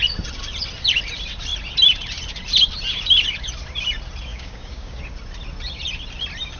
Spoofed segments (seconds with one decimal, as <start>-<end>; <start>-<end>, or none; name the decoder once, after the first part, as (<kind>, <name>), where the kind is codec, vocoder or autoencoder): 4.3-5.0 (codec, DAC)